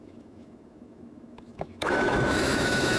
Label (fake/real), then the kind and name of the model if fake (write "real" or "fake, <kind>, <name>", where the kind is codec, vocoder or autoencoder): fake, autoencoder, DAC-VAE